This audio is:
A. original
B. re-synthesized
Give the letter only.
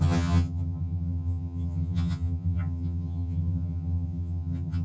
B